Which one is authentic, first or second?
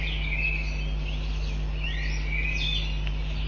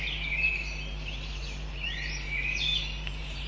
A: first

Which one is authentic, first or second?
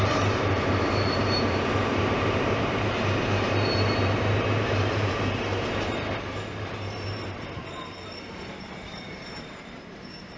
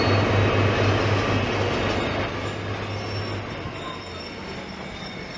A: second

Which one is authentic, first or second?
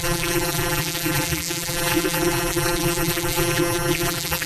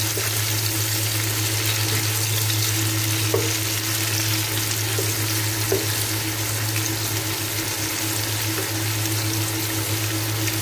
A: second